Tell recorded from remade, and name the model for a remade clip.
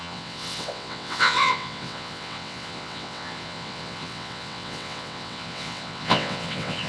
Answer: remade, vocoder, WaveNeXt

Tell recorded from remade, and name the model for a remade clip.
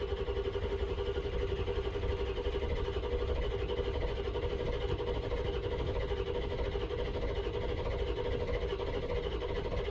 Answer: recorded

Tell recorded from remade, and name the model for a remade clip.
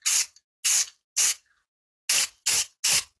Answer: recorded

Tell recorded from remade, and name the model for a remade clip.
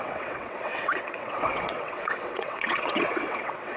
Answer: remade, vocoder, WaveNeXt